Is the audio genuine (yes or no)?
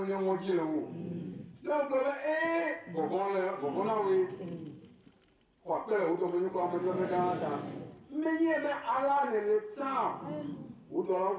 yes